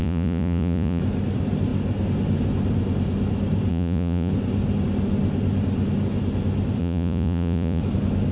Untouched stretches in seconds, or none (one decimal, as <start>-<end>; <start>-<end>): 1.0-3.7; 4.3-6.8; 7.8-8.3